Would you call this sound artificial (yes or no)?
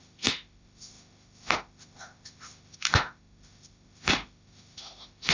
yes